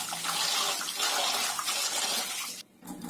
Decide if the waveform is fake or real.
real